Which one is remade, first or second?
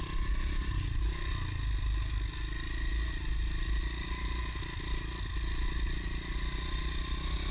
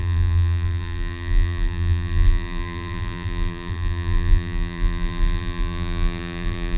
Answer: second